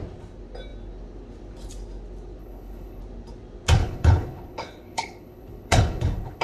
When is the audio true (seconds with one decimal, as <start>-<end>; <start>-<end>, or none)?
0.0-2.4; 3.0-3.8